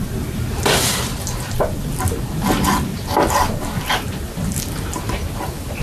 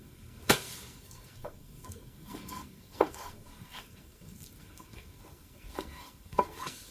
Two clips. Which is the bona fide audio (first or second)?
first